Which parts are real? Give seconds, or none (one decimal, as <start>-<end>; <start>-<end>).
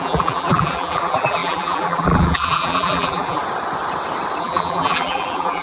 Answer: 3.4-4.4